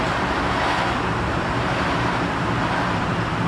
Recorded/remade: remade